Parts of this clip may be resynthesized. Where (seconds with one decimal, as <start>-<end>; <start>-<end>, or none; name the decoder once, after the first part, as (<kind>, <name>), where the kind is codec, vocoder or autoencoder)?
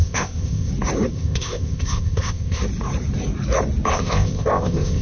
0.0-0.7 (codec, ZipCodec); 1.1-2.6; 3.9-5.0